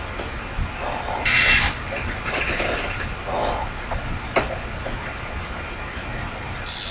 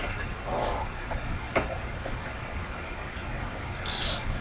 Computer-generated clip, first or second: second